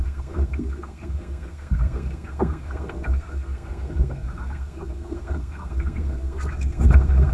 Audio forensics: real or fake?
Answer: fake